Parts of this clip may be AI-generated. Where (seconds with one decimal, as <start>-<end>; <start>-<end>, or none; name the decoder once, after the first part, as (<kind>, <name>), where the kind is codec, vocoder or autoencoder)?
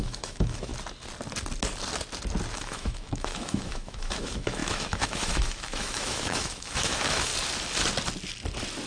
0.0-0.7 (autoencoder, DAC-VAE); 2.5-7.3